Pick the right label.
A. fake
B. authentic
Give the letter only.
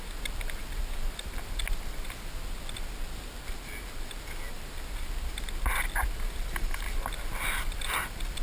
B